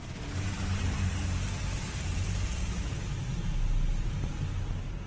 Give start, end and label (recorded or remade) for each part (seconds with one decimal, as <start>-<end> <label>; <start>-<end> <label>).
0.0-2.6 recorded; 2.6-3.1 remade; 3.1-5.1 recorded